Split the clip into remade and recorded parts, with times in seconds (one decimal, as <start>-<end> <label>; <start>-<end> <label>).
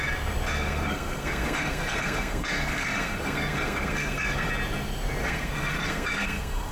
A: 0.0-0.5 recorded; 0.5-4.5 remade; 4.5-5.2 recorded; 5.2-6.7 remade